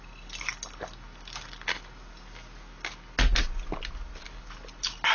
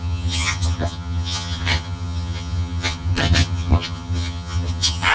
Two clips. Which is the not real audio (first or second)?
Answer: second